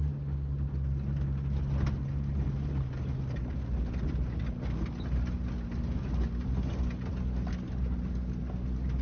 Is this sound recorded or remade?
recorded